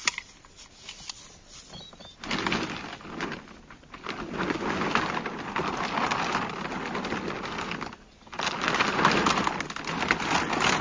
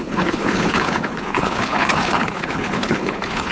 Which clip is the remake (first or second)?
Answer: second